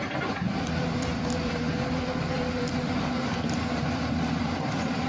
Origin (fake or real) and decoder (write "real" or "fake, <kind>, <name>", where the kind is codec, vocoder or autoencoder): fake, vocoder, BigVGAN v2